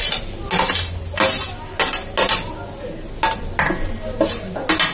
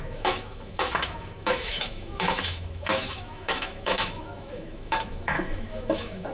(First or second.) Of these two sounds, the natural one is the first